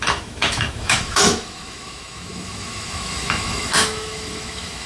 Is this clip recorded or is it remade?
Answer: remade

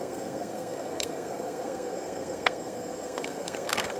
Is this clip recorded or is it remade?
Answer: remade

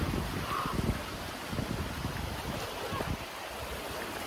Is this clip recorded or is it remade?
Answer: recorded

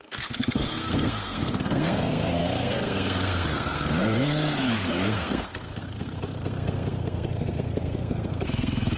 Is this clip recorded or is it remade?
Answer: remade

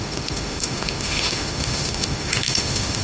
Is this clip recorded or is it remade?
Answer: remade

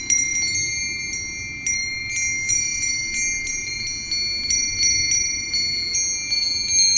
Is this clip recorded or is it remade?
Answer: recorded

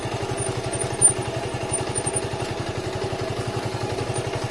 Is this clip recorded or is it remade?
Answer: recorded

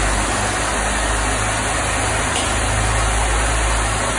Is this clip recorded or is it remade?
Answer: recorded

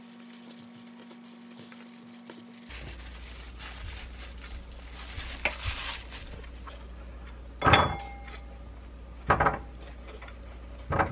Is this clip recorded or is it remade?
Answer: recorded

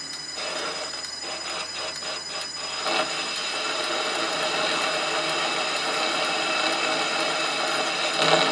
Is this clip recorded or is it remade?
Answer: recorded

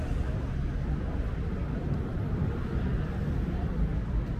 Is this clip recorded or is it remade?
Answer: recorded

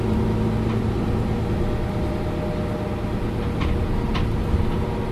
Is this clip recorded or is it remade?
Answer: recorded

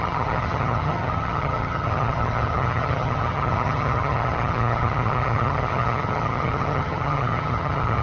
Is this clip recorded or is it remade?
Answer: remade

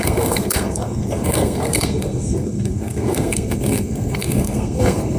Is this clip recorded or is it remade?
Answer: remade